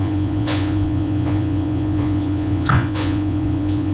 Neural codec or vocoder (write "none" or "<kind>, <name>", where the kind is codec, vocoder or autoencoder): vocoder, Vocos